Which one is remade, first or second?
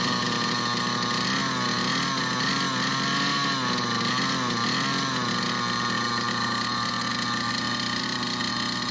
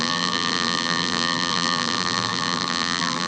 second